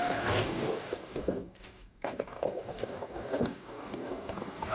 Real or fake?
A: fake